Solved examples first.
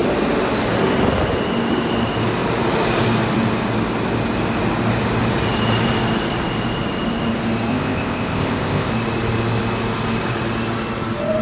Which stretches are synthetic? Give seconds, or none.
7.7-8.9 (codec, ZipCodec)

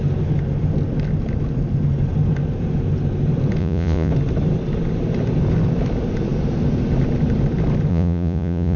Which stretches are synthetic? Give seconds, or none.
3.6-4.1 (vocoder, Vocos); 7.9-8.8

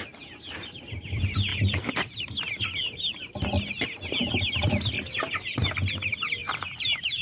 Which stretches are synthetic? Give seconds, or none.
1.5-2.3 (vocoder, BigVGAN v2); 6.4-7.2

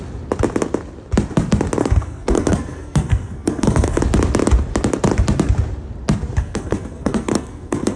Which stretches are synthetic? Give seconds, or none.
1.8-4.0 (codec, SNAC); 6.4-8.0

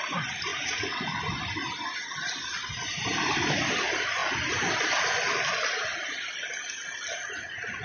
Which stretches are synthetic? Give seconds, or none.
0.5-1.2 (vocoder, Vocos)

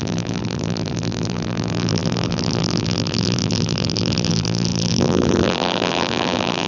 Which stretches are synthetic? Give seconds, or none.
0.0-6.7 (vocoder, BigVGAN v2)

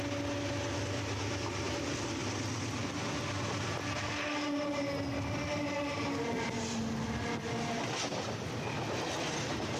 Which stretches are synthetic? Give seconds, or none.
none